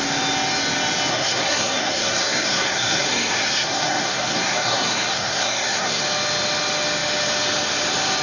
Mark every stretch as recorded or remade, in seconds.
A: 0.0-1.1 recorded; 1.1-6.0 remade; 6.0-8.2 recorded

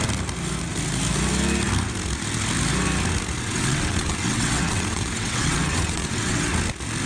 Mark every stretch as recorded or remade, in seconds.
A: 0.0-3.4 recorded; 3.4-6.5 remade; 6.5-7.1 recorded

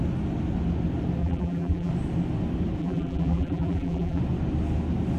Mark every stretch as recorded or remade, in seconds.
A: 0.0-1.2 recorded; 1.2-1.9 remade; 1.9-2.8 recorded; 2.8-4.2 remade; 4.2-5.2 recorded